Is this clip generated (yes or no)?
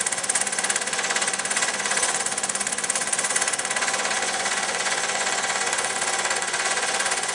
yes